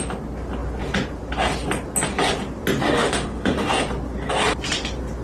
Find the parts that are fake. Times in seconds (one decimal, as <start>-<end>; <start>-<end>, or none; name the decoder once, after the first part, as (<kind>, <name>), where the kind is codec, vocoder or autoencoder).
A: 2.8-3.7 (autoencoder, DAC-VAE)

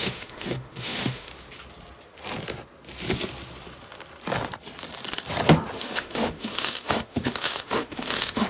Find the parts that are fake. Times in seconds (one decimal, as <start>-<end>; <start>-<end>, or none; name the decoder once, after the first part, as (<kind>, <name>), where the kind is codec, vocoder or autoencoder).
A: 0.0-1.3 (autoencoder, DAC-VAE); 5.8-8.5

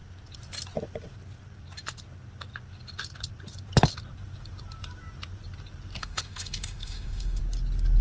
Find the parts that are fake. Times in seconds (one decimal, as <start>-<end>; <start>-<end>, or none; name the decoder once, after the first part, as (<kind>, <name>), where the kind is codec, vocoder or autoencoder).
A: 6.0-7.4 (autoencoder, DAC-VAE)

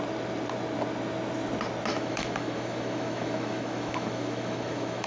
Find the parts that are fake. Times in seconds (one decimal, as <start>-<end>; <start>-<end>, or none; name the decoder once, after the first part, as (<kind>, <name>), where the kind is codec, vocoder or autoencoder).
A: 1.9-5.1 (autoencoder, DAC-VAE)

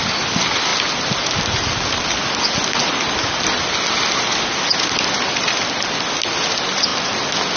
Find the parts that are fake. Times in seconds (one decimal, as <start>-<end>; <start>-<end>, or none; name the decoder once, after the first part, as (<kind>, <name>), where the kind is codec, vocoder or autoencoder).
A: none